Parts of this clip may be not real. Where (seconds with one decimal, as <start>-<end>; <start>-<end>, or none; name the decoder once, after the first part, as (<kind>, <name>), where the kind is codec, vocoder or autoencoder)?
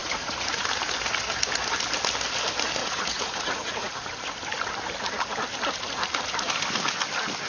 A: 0.0-0.5 (vocoder, Vocos); 2.8-4.1